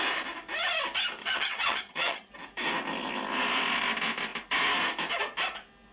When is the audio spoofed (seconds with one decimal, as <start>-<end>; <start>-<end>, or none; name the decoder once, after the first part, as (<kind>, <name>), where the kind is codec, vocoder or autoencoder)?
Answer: 1.2-2.3 (vocoder, HiFi-GAN)